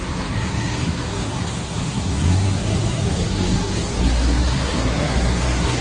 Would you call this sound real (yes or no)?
no